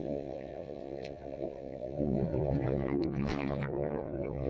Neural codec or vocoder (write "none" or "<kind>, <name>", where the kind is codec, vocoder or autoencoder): vocoder, WaveNeXt